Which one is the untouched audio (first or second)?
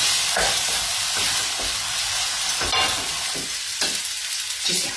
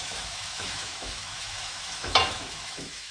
first